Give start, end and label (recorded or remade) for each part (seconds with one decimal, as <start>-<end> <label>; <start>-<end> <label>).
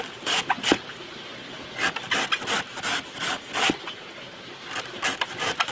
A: 0.0-5.7 recorded